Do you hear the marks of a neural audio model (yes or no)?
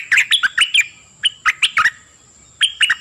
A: no